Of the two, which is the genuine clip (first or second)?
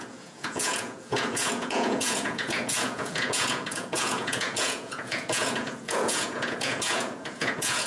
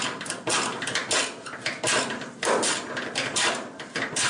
second